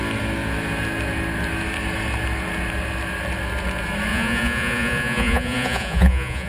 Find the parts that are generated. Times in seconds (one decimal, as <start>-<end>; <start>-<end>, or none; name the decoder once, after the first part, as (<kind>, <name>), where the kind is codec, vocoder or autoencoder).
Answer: 4.1-6.5 (vocoder, Vocos)